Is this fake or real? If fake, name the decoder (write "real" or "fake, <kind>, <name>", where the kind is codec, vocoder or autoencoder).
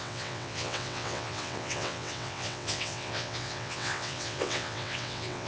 fake, vocoder, WaveNeXt